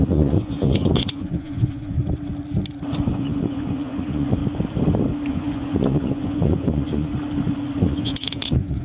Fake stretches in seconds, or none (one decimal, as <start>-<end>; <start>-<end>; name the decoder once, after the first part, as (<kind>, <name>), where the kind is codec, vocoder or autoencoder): 0.0-2.0 (vocoder, Vocos); 3.1-4.4; 5.3-7.1; 7.8-8.8